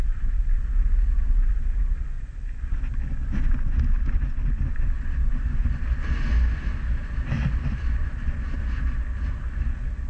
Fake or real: real